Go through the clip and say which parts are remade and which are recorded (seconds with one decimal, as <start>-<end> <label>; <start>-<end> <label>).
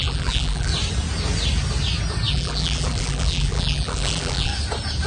0.0-0.7 remade; 0.7-2.3 recorded; 2.3-4.5 remade; 4.5-5.1 recorded